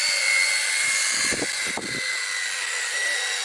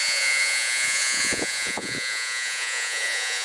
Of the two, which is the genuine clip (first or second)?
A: first